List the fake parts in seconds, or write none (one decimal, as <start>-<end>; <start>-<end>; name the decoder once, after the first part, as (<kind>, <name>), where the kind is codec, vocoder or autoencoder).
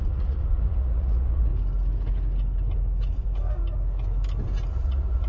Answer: 0.0-1.5 (vocoder, Vocos); 4.7-5.3